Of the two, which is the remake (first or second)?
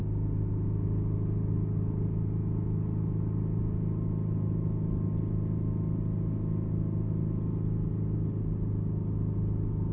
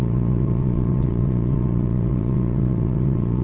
second